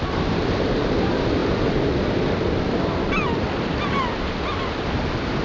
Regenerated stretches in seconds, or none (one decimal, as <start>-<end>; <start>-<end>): 0.0-1.4; 4.6-5.4